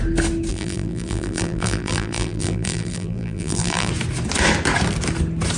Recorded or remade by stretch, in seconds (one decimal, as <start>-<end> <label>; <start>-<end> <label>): 0.0-0.5 recorded; 0.5-3.9 remade; 3.9-5.6 recorded